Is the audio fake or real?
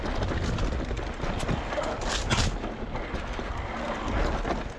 real